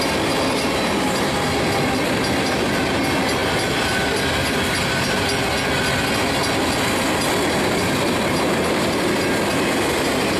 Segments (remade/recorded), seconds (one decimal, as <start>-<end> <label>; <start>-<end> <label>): 0.0-10.4 recorded